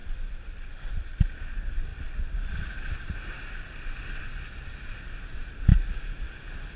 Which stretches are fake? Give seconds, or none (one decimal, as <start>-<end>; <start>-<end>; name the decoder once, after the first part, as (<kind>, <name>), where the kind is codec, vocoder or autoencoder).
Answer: 0.0-1.4 (vocoder, BigVGAN v2); 1.9-4.2